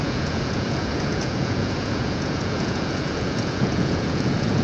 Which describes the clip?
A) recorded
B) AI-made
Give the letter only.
B